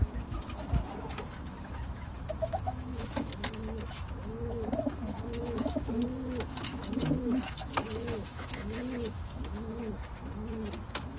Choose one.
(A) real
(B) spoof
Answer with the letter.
B